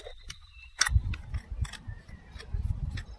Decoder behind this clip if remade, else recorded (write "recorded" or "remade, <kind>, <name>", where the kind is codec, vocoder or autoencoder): recorded